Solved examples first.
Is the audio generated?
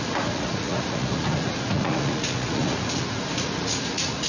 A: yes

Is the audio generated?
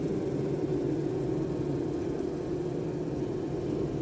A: no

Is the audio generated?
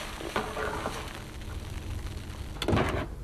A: no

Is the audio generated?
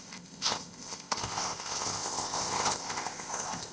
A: yes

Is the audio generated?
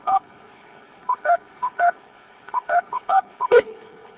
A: yes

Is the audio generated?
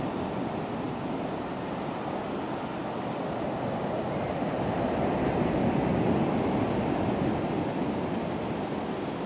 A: no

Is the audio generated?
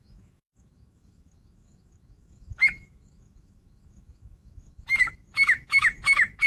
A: yes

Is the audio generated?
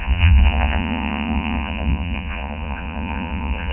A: yes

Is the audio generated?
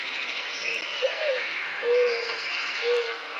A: yes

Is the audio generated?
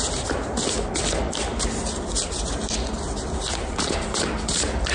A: no